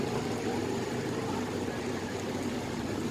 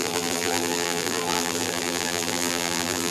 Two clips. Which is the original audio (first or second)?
first